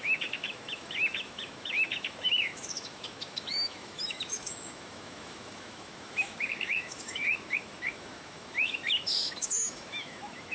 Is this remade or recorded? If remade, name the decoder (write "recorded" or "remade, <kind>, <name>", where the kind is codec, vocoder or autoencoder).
remade, autoencoder, DAC-VAE